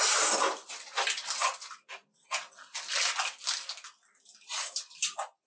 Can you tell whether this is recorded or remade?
recorded